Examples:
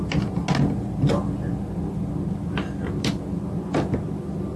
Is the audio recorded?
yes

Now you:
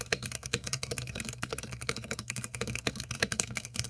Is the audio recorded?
no